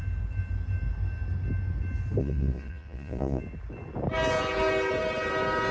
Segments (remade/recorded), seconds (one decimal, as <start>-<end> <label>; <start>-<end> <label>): 0.0-2.2 recorded; 2.2-3.4 remade; 3.4-5.7 recorded